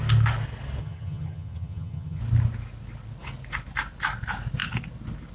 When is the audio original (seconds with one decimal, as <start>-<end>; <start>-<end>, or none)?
0.0-0.8; 2.2-5.3